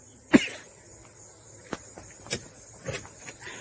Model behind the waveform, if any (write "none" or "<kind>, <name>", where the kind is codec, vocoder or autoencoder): none